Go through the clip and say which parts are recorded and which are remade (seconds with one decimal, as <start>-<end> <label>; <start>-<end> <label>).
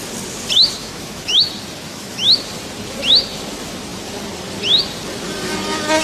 0.0-0.8 recorded; 0.8-1.4 remade; 1.4-1.9 recorded; 1.9-2.5 remade; 2.5-6.0 recorded